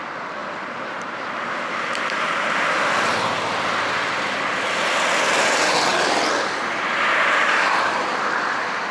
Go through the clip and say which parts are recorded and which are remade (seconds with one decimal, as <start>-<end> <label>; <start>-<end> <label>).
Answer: 0.0-5.9 remade; 5.9-6.9 recorded; 6.9-8.9 remade